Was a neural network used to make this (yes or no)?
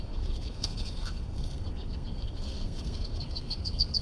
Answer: yes